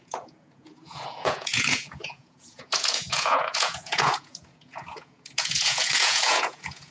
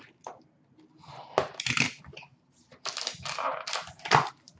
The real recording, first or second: second